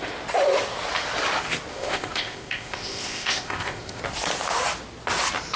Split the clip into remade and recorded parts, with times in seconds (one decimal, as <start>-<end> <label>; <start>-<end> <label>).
0.0-1.7 recorded; 1.7-4.0 remade; 4.0-5.6 recorded